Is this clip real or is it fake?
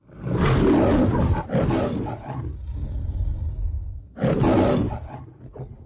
real